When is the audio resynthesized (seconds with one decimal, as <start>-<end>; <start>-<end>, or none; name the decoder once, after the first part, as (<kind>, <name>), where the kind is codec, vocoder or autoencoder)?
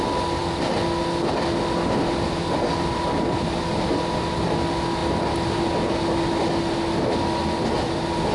none